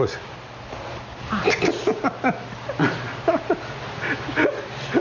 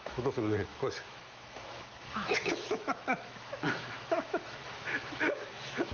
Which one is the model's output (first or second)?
second